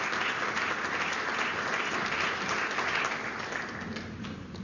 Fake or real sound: real